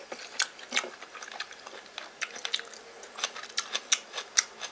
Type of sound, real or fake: real